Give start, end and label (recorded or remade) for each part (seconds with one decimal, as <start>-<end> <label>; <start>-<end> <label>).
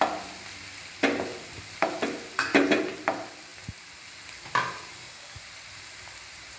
0.0-4.9 recorded; 4.9-5.4 remade; 5.4-6.6 recorded